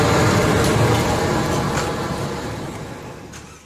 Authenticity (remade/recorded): recorded